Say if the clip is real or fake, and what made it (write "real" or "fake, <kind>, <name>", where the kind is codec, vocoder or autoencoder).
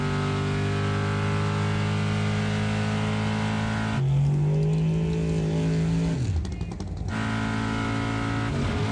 real